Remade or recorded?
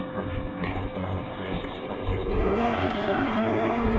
remade